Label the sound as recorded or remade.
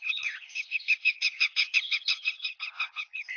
remade